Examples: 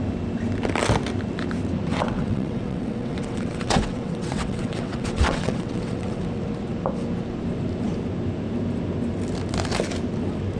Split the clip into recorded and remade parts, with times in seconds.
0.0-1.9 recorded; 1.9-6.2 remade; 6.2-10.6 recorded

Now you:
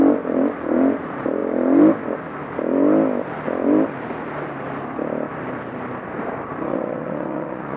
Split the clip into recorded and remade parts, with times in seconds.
0.0-6.7 recorded; 6.7-7.8 remade

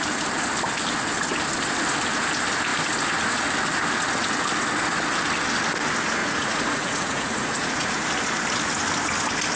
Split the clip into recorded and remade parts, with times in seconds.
0.0-6.2 recorded; 6.2-7.9 remade; 7.9-9.6 recorded

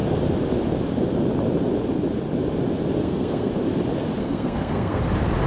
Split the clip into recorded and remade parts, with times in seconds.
0.0-3.0 recorded; 3.0-3.5 remade; 3.5-4.2 recorded; 4.2-5.0 remade; 5.0-5.5 recorded

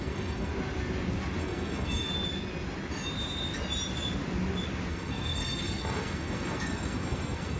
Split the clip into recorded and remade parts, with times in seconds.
0.0-0.5 remade; 0.5-1.4 recorded; 1.4-2.1 remade; 2.1-4.9 recorded; 4.9-7.6 remade

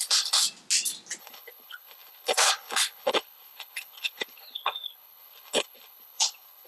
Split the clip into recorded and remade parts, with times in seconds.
0.0-0.4 remade; 0.4-1.2 recorded; 1.2-6.7 remade